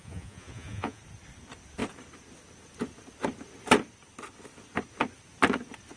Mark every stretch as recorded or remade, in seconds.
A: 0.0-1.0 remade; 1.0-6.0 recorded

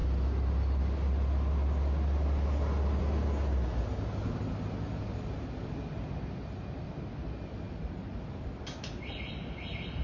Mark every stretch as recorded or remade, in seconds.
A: 0.0-10.0 recorded